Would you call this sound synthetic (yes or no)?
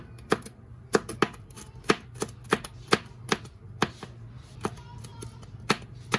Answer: no